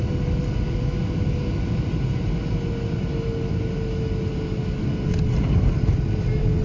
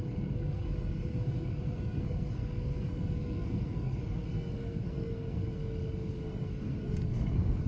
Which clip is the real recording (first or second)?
first